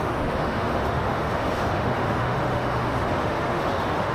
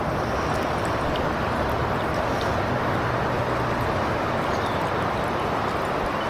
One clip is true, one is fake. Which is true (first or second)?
second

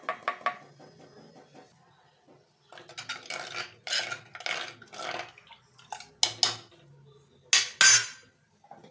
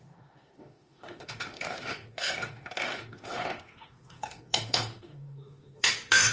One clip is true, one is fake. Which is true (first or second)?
first